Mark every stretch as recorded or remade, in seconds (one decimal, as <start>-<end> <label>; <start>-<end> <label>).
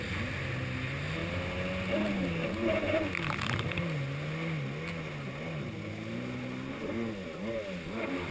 0.0-8.3 recorded